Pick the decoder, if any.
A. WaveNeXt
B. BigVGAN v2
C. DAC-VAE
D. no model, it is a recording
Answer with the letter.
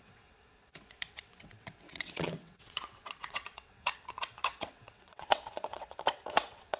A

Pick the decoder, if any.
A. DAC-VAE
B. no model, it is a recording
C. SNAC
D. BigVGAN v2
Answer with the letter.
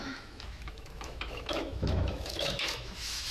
A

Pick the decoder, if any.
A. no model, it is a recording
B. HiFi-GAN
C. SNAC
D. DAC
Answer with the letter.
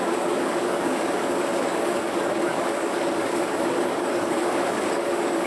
D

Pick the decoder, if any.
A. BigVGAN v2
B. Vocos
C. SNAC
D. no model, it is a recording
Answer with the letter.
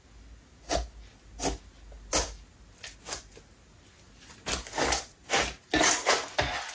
D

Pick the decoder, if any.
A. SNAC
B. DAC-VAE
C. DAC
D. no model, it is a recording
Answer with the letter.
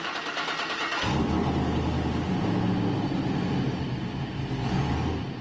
D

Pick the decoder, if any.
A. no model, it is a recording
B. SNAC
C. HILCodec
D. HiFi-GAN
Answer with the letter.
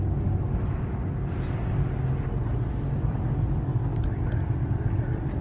A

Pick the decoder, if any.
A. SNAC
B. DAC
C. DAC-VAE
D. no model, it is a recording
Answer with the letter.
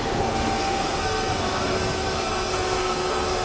A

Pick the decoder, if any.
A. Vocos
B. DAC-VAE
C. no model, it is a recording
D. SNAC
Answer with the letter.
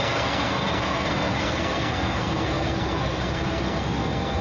D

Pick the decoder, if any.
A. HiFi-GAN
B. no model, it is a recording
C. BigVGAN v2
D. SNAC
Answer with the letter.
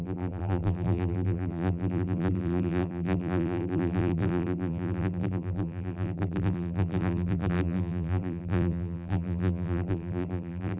C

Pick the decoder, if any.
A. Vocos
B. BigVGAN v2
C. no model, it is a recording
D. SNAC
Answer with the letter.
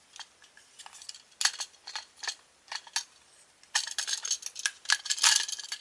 C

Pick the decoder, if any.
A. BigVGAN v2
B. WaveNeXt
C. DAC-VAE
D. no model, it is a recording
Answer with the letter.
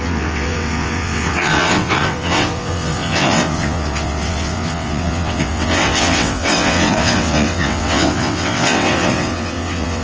B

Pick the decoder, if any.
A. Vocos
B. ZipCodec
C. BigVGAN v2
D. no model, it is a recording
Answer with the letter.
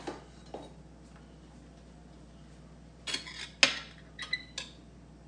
D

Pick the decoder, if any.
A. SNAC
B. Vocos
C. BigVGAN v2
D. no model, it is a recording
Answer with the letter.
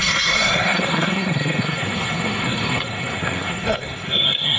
A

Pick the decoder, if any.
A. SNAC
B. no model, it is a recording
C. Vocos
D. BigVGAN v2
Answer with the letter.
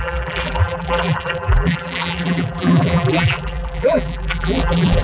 D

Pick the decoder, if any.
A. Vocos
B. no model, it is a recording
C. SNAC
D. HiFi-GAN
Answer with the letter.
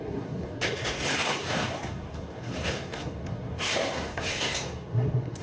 C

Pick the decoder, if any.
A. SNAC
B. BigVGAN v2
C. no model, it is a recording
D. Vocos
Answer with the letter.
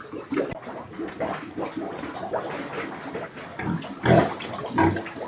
C